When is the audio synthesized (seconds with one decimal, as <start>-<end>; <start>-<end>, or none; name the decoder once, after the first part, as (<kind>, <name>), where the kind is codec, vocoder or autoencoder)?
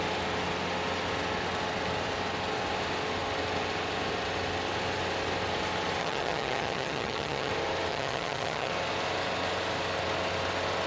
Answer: 6.0-7.5 (vocoder, HiFi-GAN); 7.9-8.7